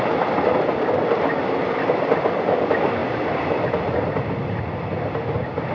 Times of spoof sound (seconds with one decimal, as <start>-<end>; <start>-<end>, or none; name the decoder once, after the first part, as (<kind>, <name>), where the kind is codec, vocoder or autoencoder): none